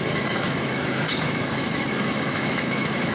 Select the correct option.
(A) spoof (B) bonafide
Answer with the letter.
A